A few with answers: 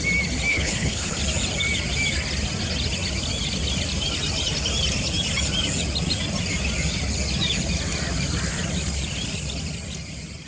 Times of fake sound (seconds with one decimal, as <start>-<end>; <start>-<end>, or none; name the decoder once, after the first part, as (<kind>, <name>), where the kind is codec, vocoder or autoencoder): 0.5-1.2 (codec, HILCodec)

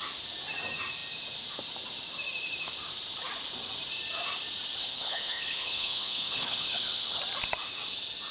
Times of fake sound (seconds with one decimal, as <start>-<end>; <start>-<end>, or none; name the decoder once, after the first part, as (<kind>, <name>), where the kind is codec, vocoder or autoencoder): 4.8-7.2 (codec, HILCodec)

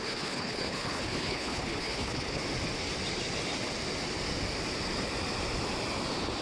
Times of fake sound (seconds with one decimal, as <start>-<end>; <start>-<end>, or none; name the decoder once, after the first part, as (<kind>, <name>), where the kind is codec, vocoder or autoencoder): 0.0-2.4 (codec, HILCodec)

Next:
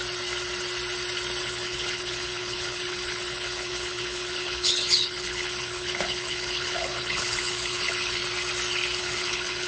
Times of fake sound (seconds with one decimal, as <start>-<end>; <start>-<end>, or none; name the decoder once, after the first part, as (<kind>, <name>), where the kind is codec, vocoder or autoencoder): 1.4-8.2 (codec, HILCodec); 9.0-9.7

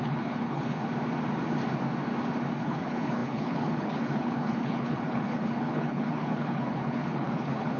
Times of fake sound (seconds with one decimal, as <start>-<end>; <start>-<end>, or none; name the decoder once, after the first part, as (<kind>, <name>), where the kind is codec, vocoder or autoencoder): 0.0-0.8 (codec, HILCodec); 2.6-7.8

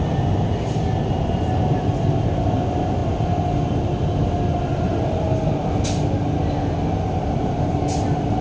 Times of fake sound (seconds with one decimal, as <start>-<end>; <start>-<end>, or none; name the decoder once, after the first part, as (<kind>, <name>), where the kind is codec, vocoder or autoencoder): none

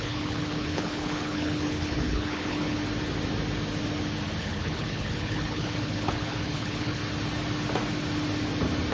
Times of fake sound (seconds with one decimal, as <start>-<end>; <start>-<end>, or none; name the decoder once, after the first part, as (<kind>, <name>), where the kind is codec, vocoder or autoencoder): 0.0-2.8 (codec, HILCodec); 4.4-7.0